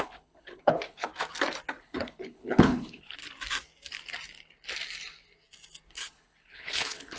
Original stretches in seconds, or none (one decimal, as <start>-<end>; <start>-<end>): 1.1-1.8; 3.2-5.9